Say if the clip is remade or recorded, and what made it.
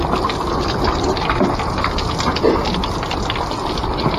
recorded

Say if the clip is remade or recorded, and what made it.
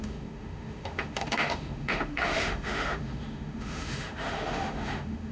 remade, autoencoder, DAC-VAE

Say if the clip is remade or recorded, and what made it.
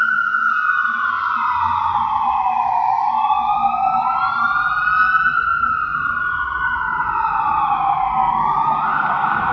recorded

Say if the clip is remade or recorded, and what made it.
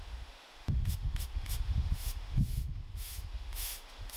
remade, autoencoder, DAC-VAE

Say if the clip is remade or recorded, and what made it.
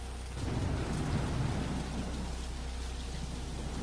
recorded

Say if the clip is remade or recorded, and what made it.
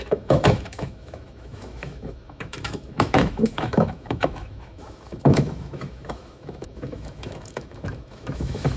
remade, autoencoder, DAC-VAE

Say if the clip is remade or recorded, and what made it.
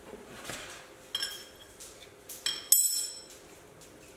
recorded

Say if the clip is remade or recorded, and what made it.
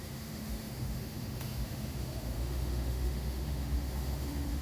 remade, autoencoder, DAC-VAE